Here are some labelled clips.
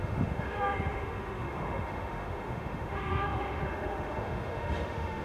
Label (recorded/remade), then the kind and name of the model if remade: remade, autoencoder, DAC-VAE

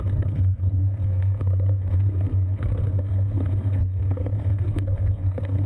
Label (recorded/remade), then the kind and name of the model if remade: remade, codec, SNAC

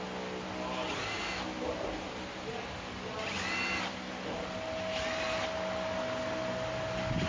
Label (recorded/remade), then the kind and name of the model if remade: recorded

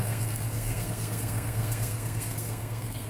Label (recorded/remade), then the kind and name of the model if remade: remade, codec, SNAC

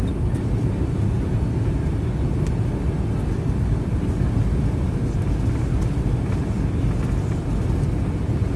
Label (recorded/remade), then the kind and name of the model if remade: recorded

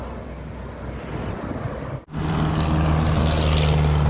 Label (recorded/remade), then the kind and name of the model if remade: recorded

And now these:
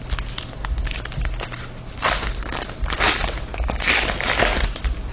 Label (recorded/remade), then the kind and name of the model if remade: recorded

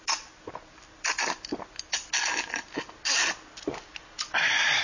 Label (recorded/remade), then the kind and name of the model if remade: recorded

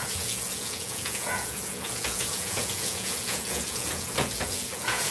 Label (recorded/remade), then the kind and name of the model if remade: remade, vocoder, Vocos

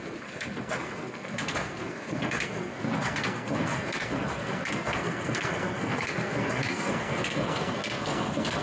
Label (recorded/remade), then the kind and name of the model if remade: remade, codec, SNAC